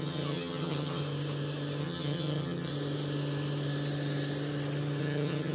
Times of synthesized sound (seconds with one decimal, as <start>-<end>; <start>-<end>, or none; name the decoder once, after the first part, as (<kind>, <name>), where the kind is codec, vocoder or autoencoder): 0.0-1.0 (vocoder, HiFi-GAN); 1.8-2.7; 5.0-5.5